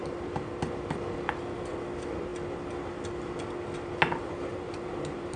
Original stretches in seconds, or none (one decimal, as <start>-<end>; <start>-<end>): 0.6-4.5